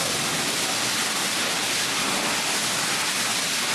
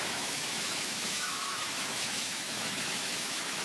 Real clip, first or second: first